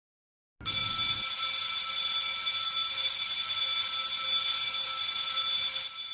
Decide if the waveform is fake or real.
real